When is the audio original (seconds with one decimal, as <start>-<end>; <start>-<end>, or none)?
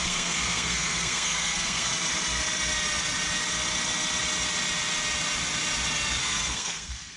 1.9-6.2